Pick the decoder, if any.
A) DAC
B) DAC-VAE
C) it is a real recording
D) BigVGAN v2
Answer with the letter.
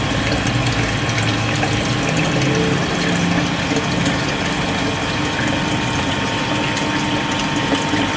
C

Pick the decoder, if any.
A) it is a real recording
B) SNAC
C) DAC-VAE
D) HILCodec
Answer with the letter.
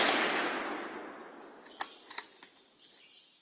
A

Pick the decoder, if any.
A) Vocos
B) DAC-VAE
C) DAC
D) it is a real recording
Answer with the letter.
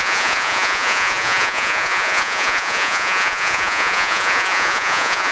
A